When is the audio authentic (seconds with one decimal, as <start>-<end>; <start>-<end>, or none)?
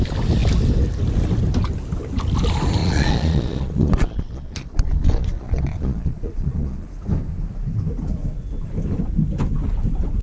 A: 0.0-2.8; 6.9-10.2